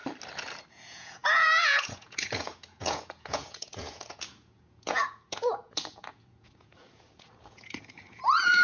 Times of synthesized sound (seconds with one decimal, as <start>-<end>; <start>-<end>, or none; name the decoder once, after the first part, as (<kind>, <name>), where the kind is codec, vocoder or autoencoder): 0.7-8.6 (vocoder, Vocos)